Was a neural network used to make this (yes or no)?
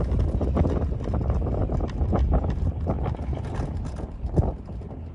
no